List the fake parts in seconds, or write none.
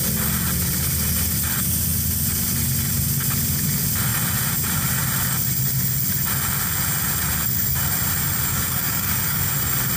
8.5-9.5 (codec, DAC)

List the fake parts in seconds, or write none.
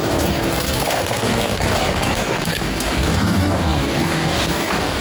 0.0-5.0 (codec, DAC)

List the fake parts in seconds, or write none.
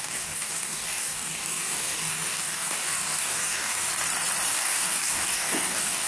0.0-3.9 (codec, DAC); 4.5-6.1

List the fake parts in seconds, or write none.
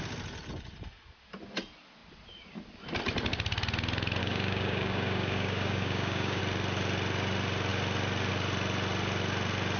4.2-6.4 (codec, DAC)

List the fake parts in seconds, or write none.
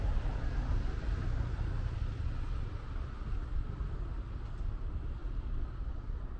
none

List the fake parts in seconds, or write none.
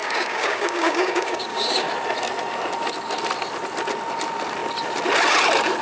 0.0-1.9 (codec, DAC)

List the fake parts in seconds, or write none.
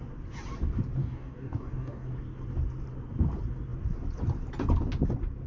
1.0-2.1 (codec, DAC)